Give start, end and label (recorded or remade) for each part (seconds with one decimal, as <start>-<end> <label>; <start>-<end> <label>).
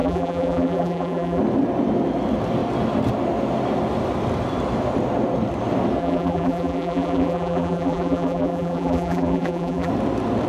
0.0-1.4 remade; 1.4-6.0 recorded; 6.0-9.9 remade; 9.9-10.5 recorded